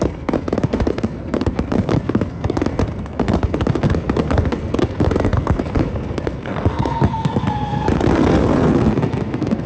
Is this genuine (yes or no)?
no